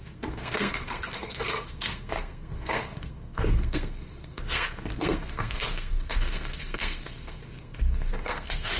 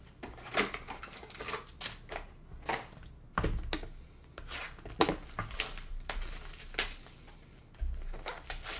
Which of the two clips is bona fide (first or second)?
second